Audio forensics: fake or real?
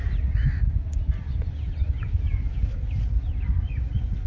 real